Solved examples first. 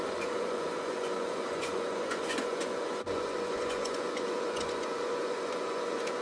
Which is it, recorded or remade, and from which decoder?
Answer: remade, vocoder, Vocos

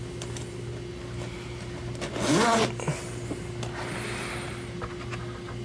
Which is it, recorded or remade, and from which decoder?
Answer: recorded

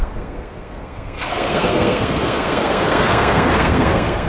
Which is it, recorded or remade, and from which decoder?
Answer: remade, codec, SNAC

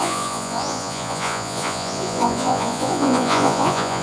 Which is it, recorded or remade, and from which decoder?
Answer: remade, vocoder, Vocos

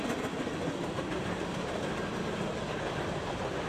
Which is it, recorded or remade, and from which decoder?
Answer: recorded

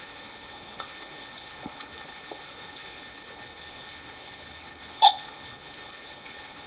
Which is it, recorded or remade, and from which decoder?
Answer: remade, codec, HILCodec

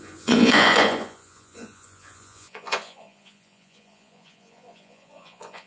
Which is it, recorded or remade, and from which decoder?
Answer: remade, vocoder, Vocos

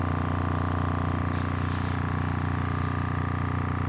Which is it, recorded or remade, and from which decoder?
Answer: recorded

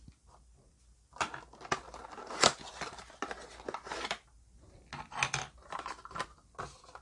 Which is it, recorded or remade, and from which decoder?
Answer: recorded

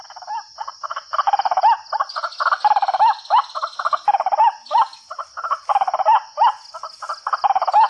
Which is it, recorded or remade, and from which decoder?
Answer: recorded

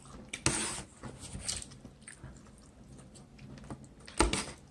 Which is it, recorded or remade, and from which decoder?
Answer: recorded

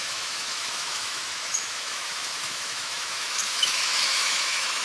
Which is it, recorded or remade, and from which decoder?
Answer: remade, autoencoder, DAC-VAE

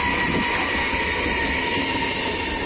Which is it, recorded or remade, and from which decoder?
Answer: recorded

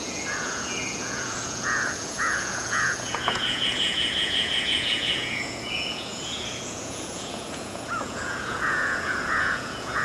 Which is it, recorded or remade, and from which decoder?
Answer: remade, vocoder, Vocos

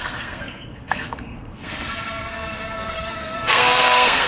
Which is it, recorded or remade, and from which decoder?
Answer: remade, codec, SNAC